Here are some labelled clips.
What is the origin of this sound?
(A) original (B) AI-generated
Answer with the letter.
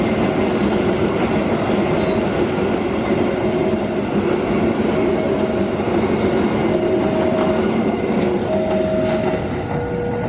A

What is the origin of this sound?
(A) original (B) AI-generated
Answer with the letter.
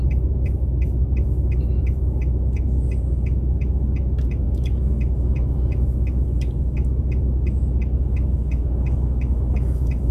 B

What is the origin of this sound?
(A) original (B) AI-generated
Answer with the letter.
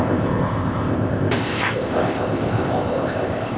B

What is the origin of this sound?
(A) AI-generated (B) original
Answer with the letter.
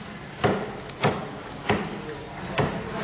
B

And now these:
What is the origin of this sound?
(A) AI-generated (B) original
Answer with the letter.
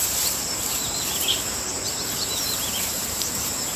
A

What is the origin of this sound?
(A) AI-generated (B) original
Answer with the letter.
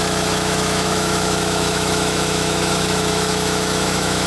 A